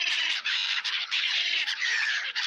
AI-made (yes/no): yes